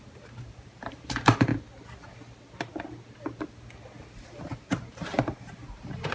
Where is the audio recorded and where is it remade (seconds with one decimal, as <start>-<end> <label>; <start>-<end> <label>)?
0.0-1.5 remade; 1.5-4.7 recorded; 4.7-6.1 remade